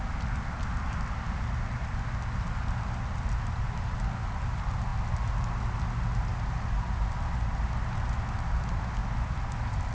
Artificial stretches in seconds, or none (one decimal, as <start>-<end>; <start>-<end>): none